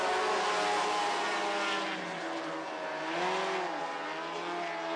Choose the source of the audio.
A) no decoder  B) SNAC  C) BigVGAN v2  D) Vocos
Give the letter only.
A